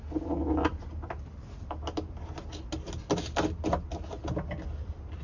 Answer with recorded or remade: recorded